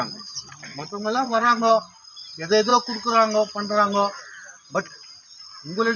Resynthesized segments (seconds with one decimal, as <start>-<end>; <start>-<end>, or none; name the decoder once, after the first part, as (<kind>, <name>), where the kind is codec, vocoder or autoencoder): 0.7-1.6 (vocoder, WaveNeXt)